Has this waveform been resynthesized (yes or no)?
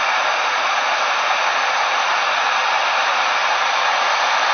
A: no